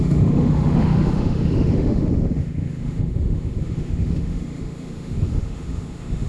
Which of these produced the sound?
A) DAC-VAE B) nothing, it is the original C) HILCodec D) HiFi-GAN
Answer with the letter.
A